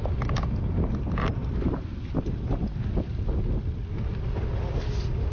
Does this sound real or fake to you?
real